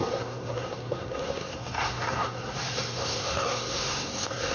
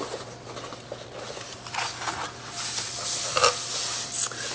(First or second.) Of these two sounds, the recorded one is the second